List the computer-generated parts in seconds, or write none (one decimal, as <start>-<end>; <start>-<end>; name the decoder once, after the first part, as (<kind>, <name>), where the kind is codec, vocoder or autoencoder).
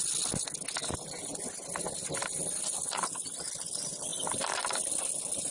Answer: none